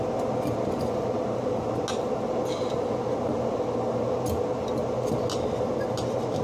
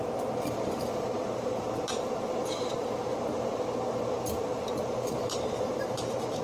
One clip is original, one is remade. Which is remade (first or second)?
second